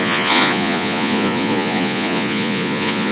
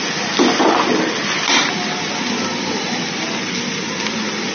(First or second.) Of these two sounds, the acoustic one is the second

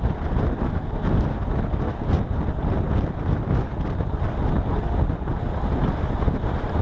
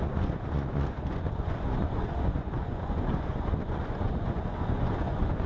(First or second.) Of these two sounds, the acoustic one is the first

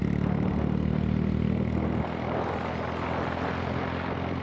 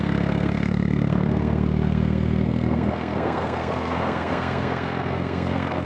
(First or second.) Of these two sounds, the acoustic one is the first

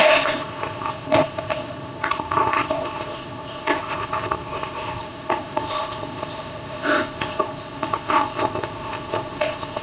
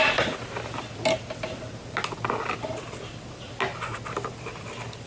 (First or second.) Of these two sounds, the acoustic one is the second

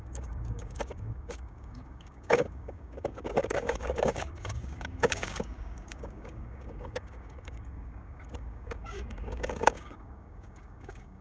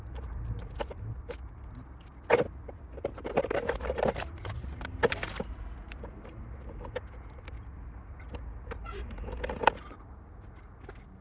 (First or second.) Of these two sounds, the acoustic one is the second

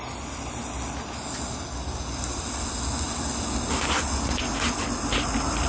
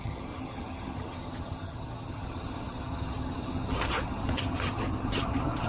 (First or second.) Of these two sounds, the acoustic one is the first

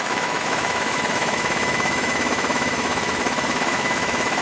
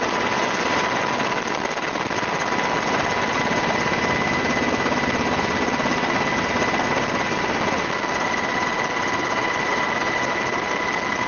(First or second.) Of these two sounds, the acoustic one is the second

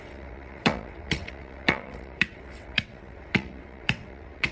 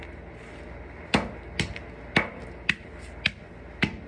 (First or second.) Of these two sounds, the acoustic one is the second